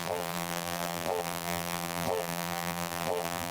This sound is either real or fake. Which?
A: fake